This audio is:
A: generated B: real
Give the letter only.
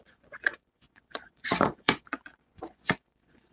A